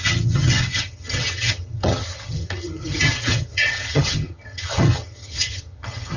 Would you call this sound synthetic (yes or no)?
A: yes